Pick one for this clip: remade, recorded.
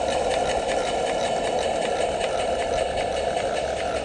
recorded